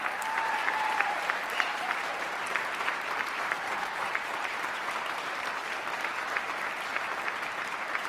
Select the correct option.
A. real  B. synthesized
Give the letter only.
B